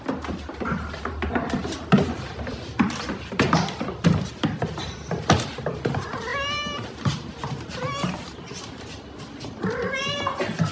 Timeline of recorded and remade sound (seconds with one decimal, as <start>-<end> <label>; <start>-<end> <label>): 0.0-10.7 recorded